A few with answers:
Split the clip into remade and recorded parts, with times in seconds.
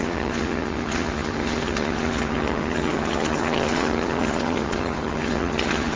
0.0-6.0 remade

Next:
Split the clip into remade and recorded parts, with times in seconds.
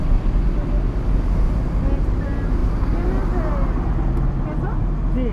0.0-5.3 recorded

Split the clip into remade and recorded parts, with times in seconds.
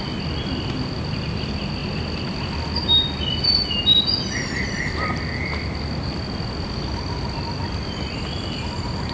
0.0-9.1 recorded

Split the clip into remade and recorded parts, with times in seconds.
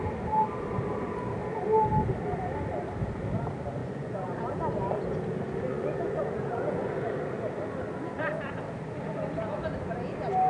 0.0-3.8 recorded; 3.8-4.3 remade; 4.3-5.7 recorded; 5.7-7.1 remade; 7.1-10.5 recorded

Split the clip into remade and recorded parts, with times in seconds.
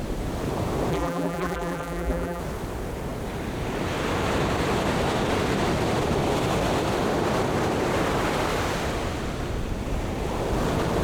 0.0-0.9 recorded; 0.9-2.4 remade; 2.4-11.0 recorded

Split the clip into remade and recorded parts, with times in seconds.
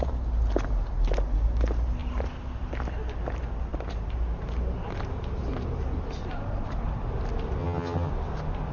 0.0-7.6 recorded; 7.6-8.1 remade; 8.1-8.7 recorded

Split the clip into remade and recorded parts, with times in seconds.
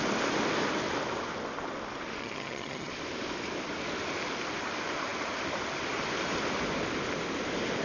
0.0-2.2 recorded; 2.2-2.9 remade; 2.9-7.8 recorded